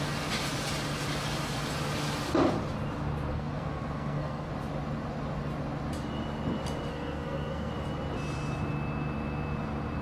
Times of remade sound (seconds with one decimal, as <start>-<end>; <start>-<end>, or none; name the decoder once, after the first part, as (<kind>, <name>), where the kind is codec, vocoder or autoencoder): 3.3-4.5 (codec, SNAC); 6.9-7.7